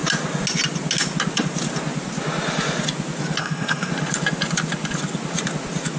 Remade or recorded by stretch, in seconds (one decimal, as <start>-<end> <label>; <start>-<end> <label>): 0.0-3.4 recorded; 3.4-3.9 remade; 3.9-6.0 recorded